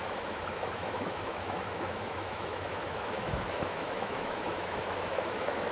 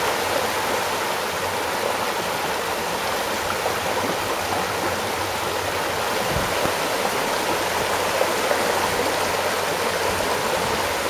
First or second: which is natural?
second